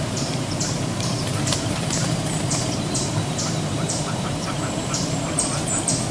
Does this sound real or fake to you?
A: fake